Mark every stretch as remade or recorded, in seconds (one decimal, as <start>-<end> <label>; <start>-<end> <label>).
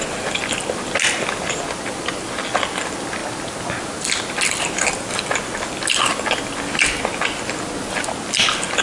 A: 0.0-8.8 recorded